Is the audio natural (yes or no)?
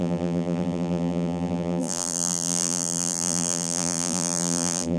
no